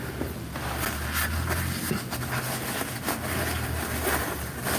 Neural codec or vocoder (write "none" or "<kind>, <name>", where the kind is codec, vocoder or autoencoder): none